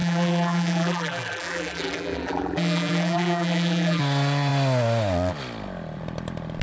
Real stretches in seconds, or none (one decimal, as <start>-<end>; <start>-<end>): 4.0-6.6